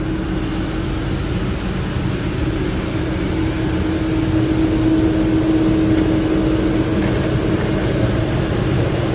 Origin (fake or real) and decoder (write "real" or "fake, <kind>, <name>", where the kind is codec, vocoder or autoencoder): real